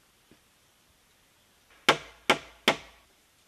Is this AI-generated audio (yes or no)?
no